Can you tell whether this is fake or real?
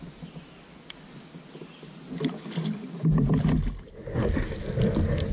real